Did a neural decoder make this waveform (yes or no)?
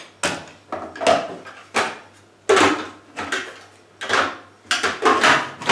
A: no